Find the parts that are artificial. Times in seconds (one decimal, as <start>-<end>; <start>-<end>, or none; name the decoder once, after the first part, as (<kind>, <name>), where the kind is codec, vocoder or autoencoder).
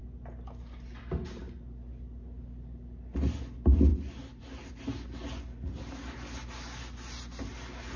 3.9-4.8 (vocoder, BigVGAN v2)